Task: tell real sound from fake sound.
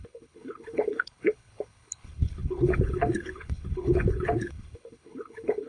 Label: fake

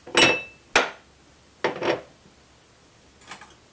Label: real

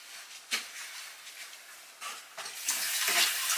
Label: real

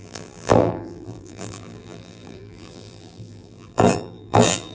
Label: fake